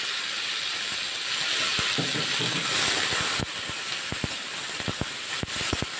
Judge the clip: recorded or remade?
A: recorded